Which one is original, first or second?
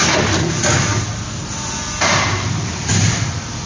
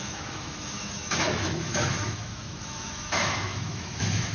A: first